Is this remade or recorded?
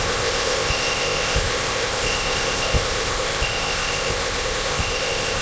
remade